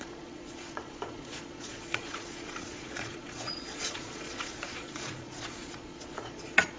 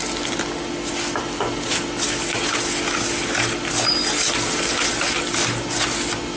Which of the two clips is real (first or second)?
second